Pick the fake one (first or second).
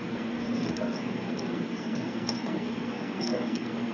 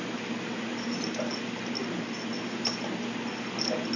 first